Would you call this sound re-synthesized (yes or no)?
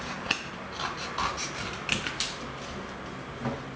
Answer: no